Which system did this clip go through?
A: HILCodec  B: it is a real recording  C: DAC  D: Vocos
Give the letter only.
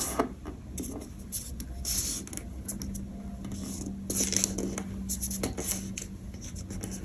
B